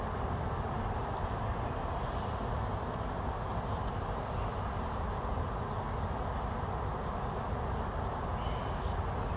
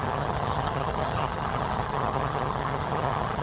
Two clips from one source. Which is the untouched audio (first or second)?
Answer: first